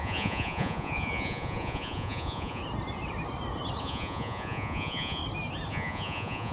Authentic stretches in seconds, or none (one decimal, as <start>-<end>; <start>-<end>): 2.6-3.8; 5.2-5.7